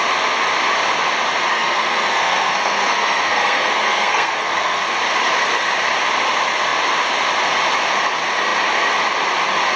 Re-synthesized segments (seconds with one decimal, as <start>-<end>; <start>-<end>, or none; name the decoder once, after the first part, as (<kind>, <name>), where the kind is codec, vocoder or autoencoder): 1.5-5.0 (codec, SNAC)